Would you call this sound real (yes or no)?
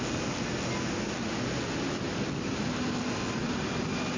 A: yes